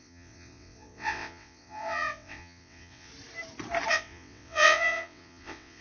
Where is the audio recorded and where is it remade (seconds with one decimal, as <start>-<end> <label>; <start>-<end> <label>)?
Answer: 0.0-3.1 remade; 3.1-3.9 recorded; 3.9-5.8 remade